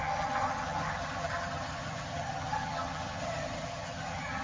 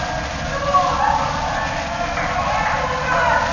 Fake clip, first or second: first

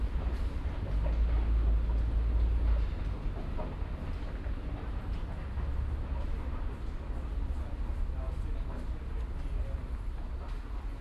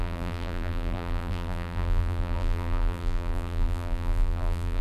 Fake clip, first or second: second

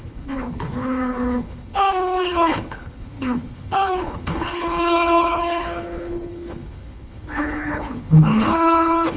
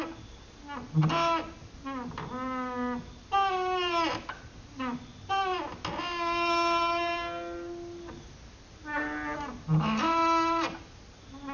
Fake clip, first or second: first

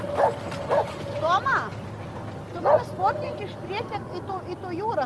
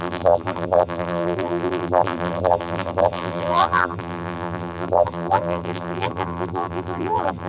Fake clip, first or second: second